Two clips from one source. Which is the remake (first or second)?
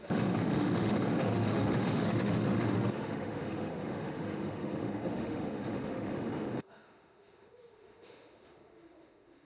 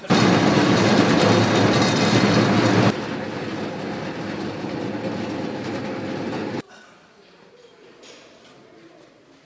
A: first